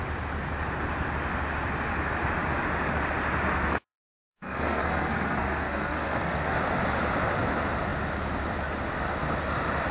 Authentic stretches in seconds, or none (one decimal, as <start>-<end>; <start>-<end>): 0.0-3.5; 6.6-9.9